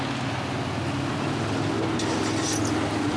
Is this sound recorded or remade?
recorded